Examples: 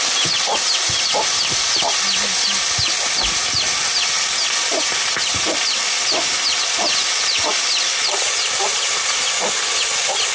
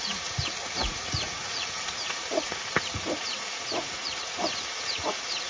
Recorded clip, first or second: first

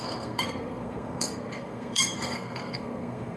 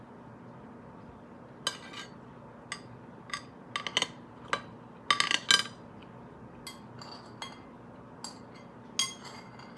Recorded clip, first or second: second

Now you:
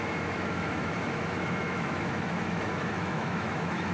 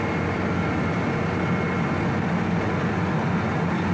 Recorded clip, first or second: second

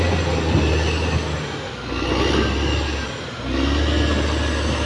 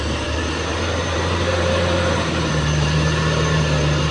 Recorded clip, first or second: first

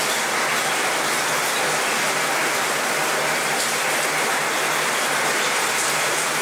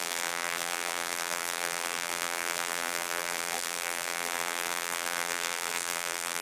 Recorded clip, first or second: first